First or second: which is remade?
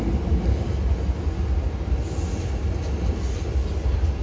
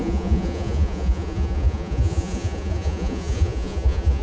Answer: second